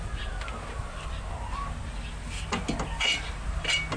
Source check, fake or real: real